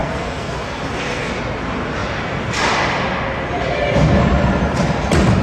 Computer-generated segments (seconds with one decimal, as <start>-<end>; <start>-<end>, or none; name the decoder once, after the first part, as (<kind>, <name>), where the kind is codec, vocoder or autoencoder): 0.0-1.3 (codec, SNAC)